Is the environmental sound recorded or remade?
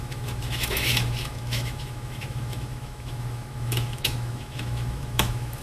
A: remade